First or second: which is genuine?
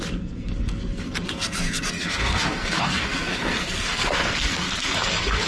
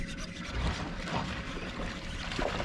second